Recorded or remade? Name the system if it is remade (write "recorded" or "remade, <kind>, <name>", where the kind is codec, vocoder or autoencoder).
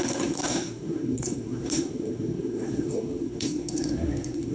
remade, codec, SNAC